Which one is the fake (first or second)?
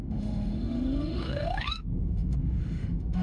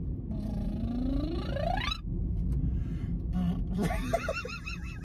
first